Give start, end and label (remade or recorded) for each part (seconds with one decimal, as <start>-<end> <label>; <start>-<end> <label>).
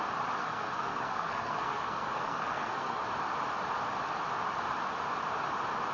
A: 0.0-0.4 recorded; 0.4-3.0 remade; 3.0-5.9 recorded